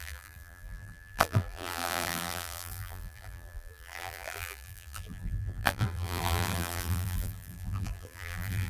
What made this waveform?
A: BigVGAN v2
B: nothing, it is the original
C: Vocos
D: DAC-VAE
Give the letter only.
A